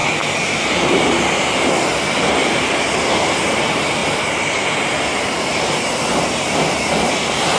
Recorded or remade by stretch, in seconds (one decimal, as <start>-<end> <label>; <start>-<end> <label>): 0.0-2.4 recorded; 2.4-3.4 remade; 3.4-4.0 recorded; 4.0-4.9 remade; 4.9-6.1 recorded; 6.1-7.6 remade

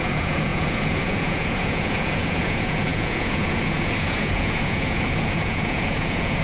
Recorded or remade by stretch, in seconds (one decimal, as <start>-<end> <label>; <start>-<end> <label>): 0.0-6.4 remade

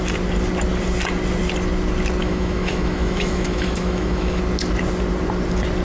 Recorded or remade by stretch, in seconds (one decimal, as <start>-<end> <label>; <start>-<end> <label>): 0.0-2.2 recorded; 2.2-4.4 remade; 4.4-5.8 recorded

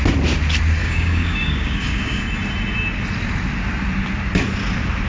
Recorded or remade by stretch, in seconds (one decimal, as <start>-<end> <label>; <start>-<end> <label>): 0.0-0.8 recorded; 0.8-2.2 remade; 2.2-5.1 recorded

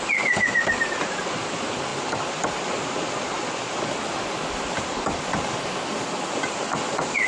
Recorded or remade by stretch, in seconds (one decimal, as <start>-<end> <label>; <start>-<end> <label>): 0.0-7.3 recorded

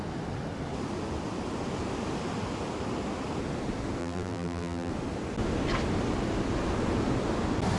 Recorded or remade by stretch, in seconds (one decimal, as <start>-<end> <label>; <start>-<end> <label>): 0.0-4.0 recorded; 4.0-4.9 remade; 4.9-7.8 recorded